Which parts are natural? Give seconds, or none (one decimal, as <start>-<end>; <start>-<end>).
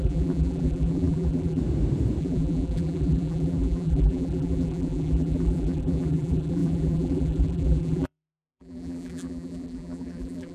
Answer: 1.6-2.2